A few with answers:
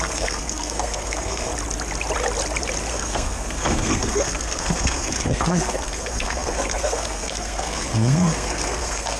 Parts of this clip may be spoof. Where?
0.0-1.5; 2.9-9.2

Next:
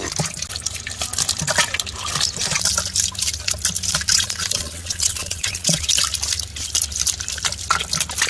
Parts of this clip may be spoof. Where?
4.1-5.9